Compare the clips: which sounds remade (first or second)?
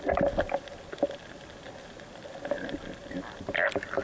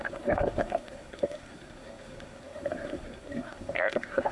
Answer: second